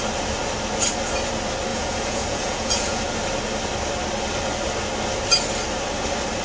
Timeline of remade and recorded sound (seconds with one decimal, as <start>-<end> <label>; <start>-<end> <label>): 0.0-1.7 recorded; 1.7-3.0 remade; 3.0-6.4 recorded